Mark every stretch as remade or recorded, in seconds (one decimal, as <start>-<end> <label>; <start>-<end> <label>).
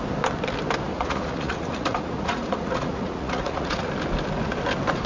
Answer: 0.0-0.9 recorded; 0.9-3.9 remade; 3.9-5.1 recorded